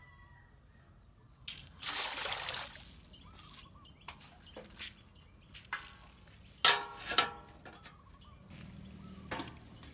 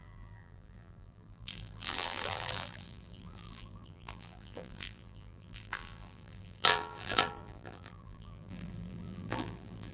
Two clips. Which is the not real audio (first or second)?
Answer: second